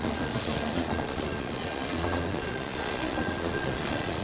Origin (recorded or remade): remade